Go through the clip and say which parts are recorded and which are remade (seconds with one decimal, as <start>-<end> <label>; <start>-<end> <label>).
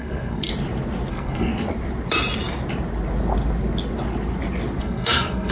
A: 0.0-0.5 remade; 0.5-1.1 recorded; 1.1-1.5 remade; 1.5-4.8 recorded; 4.8-5.5 remade